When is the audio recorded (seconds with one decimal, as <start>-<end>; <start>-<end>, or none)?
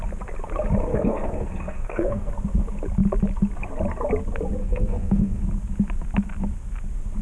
0.0-0.9; 2.3-4.6; 5.4-7.2